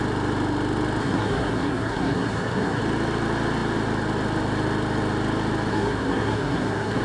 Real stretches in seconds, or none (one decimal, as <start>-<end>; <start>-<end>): 0.0-1.0; 2.8-5.7

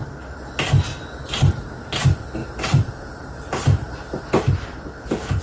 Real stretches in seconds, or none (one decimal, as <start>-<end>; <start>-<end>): 0.0-0.9; 1.6-2.4; 4.2-5.4

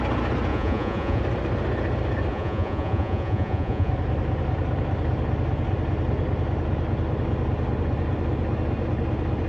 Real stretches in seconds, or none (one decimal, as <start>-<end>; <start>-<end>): 0.0-0.5; 1.2-2.3; 3.9-9.5

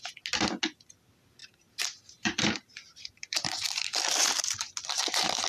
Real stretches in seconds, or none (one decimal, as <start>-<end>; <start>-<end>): 0.0-1.4; 4.7-5.5

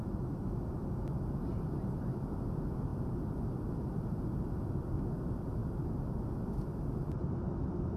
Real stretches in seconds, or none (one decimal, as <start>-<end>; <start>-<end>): 0.0-2.9; 3.7-5.6; 7.1-8.0

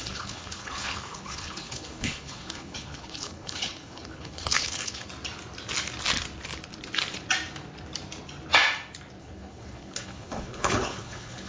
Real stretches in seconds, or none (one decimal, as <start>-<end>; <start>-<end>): 5.1-9.2

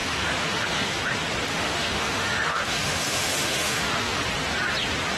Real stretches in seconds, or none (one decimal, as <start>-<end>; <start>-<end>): 1.0-1.5; 4.2-5.2